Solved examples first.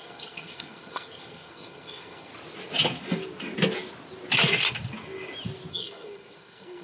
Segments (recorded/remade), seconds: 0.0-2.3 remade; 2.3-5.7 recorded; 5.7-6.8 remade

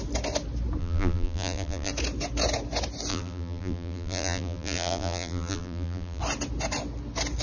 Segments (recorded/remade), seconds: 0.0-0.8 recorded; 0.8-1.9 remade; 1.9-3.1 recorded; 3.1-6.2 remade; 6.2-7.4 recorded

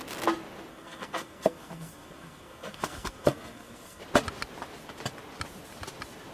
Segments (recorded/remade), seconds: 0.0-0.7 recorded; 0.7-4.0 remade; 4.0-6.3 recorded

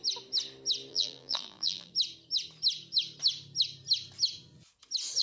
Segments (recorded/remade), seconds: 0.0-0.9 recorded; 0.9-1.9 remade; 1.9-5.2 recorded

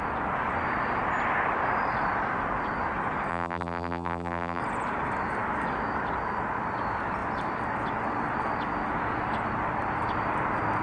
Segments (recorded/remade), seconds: 0.0-3.3 recorded; 3.3-4.6 remade; 4.6-10.8 recorded

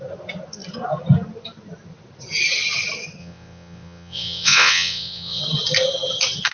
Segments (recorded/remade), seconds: 0.0-3.2 recorded; 3.2-5.4 remade; 5.4-6.5 recorded

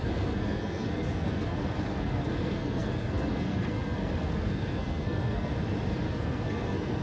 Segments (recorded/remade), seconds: 0.0-5.5 remade; 5.5-6.1 recorded; 6.1-7.0 remade

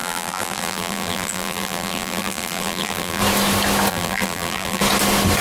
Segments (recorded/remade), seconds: 0.0-3.2 remade; 3.2-3.9 recorded; 3.9-4.8 remade; 4.8-5.4 recorded